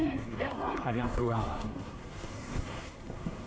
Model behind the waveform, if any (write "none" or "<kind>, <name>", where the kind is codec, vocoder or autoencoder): codec, SNAC